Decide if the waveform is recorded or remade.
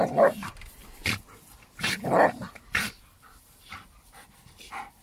recorded